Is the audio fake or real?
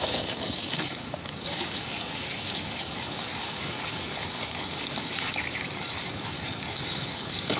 fake